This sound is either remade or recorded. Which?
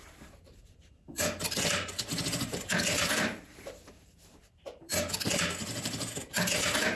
remade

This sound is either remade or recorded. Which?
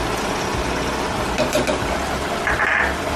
recorded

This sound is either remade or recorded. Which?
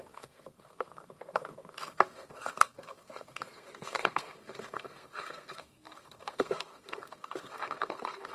remade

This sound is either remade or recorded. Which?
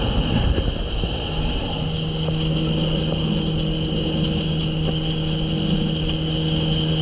recorded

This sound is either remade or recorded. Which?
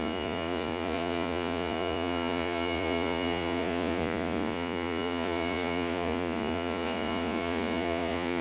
remade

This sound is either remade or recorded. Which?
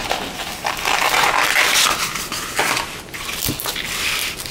recorded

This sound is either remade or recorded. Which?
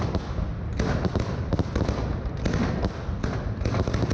recorded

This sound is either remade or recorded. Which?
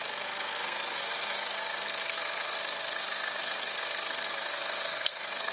remade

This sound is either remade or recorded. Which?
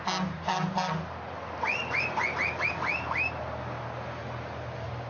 recorded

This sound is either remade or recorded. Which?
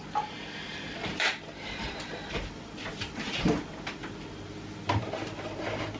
recorded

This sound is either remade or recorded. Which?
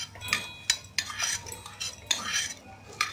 recorded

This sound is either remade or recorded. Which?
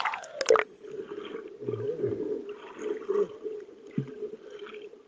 recorded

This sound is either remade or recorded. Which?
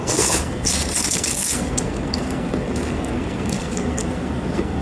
remade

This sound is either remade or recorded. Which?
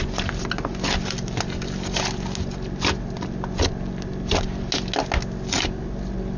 recorded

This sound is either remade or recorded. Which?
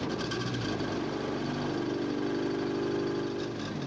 recorded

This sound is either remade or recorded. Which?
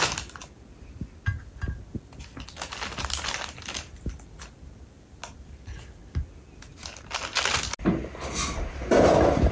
recorded